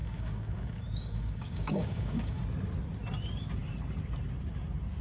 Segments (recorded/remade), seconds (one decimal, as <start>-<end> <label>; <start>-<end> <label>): 0.0-2.4 remade; 2.4-5.0 recorded